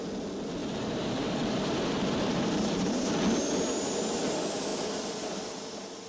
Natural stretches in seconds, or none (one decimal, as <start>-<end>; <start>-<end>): 0.0-0.6; 3.2-6.1